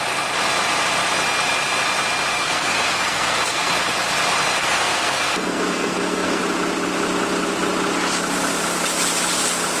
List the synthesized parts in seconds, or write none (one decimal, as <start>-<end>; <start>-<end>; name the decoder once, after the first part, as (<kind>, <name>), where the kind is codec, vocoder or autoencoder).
2.3-3.7 (codec, SNAC); 4.6-6.4